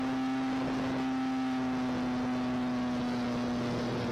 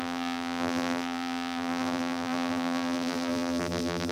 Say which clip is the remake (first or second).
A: second